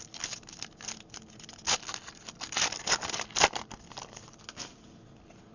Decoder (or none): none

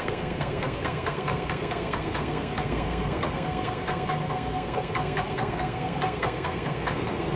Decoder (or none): codec, SNAC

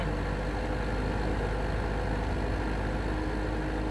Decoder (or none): none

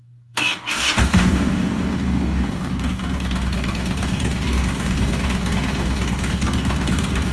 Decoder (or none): codec, DAC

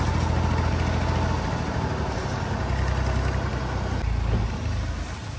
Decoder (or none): none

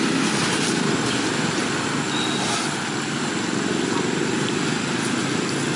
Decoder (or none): none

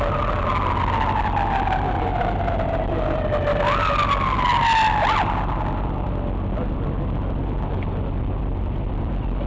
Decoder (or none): none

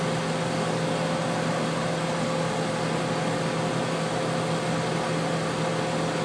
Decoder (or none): none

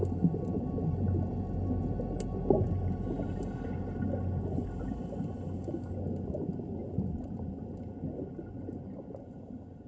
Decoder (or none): none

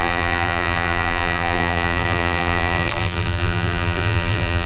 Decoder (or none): vocoder, BigVGAN v2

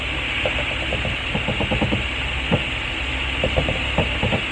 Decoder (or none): none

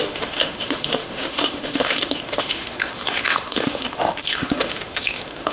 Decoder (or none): autoencoder, DAC-VAE